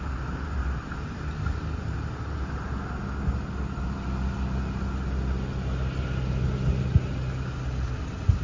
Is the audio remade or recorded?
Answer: recorded